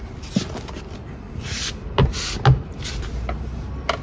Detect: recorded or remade recorded